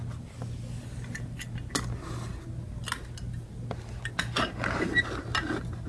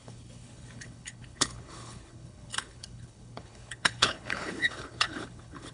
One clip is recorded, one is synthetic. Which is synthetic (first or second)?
second